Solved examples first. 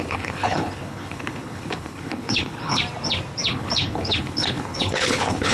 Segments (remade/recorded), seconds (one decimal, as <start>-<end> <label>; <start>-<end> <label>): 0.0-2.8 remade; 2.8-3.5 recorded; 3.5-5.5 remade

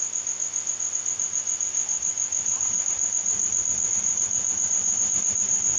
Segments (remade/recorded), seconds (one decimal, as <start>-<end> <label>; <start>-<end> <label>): 0.0-5.8 recorded

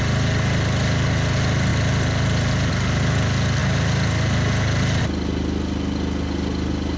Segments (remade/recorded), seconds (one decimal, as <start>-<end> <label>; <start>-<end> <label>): 0.0-7.0 recorded

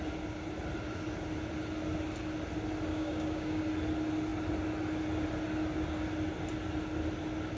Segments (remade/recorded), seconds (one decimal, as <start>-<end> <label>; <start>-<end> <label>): 0.0-2.9 recorded; 2.9-3.6 remade; 3.6-7.6 recorded